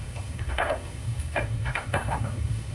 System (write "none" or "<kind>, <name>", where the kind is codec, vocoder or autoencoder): codec, SNAC